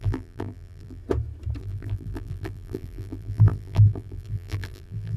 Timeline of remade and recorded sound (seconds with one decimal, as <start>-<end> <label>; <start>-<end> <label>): 0.0-1.0 remade; 1.0-1.6 recorded; 1.6-5.2 remade